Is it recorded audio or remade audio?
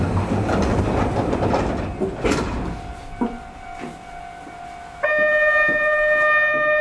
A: recorded